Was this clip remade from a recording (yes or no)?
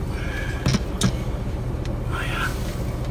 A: no